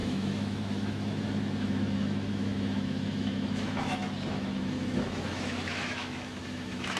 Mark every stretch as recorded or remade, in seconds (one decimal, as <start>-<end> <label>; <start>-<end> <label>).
0.0-7.0 remade